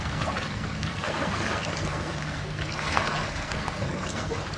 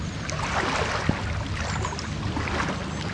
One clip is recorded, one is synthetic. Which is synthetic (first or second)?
first